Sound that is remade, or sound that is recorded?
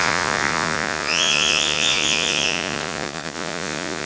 remade